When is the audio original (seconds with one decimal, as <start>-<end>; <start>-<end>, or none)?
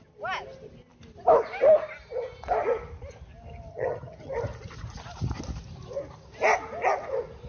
0.0-3.7; 4.3-7.5